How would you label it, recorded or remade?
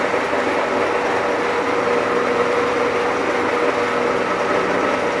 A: recorded